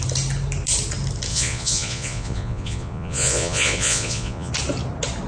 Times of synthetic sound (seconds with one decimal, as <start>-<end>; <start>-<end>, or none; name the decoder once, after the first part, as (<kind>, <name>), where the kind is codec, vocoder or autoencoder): 1.3-4.5 (vocoder, Vocos)